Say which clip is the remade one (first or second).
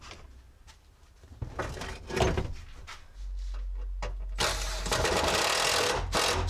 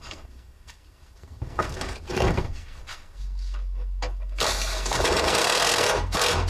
second